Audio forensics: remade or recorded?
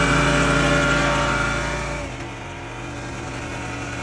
recorded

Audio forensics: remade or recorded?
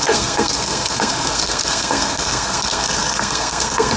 remade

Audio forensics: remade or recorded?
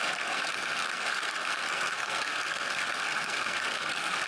remade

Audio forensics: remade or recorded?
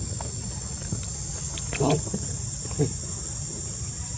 recorded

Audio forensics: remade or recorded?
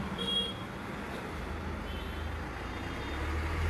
recorded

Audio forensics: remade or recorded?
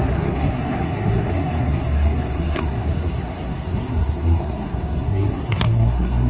remade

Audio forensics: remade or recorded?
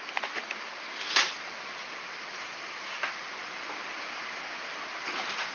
recorded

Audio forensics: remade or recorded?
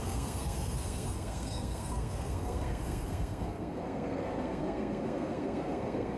remade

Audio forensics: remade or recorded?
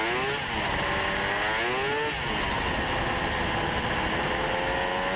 recorded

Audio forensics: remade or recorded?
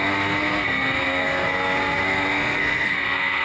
remade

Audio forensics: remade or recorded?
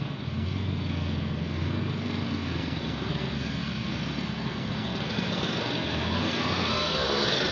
remade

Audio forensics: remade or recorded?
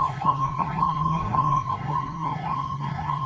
remade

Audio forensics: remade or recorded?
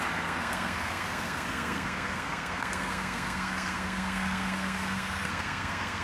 remade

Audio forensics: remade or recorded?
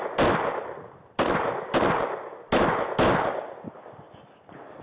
recorded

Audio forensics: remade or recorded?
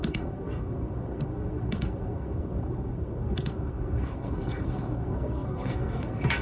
remade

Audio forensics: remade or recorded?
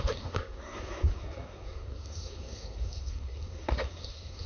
remade